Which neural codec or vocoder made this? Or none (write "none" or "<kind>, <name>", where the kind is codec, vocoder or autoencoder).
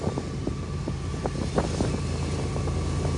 none